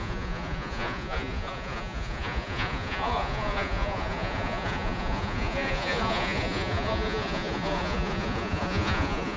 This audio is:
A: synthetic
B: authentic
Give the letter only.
A